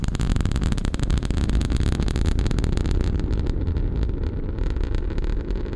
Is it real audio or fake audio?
real